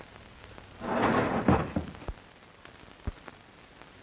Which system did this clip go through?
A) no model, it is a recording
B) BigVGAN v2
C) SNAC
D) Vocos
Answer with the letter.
A